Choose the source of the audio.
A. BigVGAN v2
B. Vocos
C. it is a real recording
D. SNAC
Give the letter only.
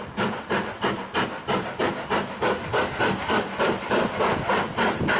C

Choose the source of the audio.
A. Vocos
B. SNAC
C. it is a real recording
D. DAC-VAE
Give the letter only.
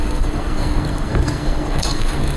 B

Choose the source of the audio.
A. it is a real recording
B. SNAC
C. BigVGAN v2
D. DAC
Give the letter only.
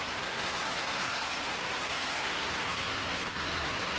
B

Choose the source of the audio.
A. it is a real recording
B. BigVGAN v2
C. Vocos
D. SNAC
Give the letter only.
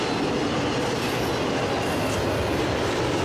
A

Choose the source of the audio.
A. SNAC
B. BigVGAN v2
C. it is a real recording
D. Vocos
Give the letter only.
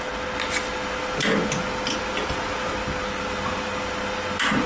C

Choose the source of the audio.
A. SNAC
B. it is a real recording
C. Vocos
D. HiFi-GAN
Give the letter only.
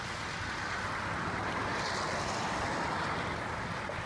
B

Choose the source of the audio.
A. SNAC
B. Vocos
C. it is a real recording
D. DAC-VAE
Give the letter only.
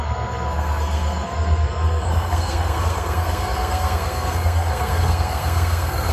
A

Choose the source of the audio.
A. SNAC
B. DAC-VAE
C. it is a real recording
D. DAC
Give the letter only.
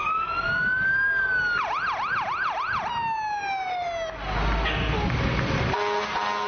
C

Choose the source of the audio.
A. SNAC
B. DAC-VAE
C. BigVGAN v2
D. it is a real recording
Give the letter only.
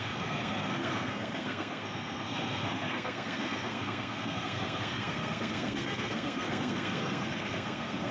A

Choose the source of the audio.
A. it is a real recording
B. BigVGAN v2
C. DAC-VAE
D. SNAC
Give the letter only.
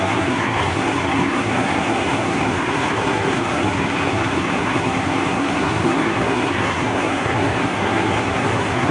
D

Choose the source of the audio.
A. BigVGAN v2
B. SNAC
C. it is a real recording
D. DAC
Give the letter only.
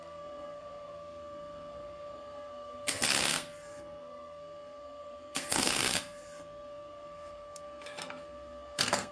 B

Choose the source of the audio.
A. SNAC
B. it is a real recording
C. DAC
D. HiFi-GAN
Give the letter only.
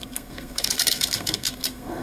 A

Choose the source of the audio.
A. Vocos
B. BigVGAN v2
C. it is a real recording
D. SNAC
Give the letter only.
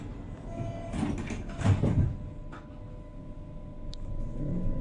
C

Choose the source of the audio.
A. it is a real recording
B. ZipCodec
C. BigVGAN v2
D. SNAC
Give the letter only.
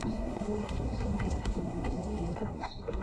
D